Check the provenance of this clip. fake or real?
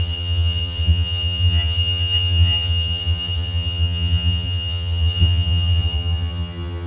fake